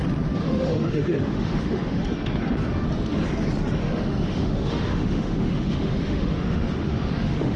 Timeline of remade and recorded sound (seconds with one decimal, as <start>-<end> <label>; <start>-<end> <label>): 0.0-0.4 recorded; 0.4-2.0 remade; 2.0-3.8 recorded; 3.8-7.6 remade